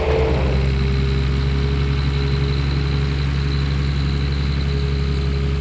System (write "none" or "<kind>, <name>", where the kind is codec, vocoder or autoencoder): none